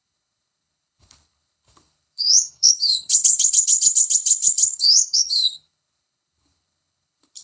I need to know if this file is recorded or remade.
remade